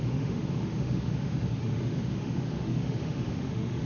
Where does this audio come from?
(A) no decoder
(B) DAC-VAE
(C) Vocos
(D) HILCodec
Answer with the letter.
B